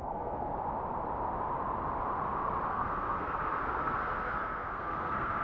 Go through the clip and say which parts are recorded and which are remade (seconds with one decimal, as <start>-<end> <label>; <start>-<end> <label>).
0.0-0.5 remade; 0.5-2.7 recorded; 2.7-5.4 remade